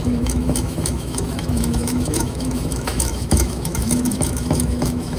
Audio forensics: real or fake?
fake